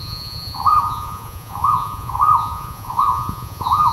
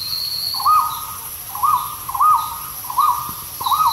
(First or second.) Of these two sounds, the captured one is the second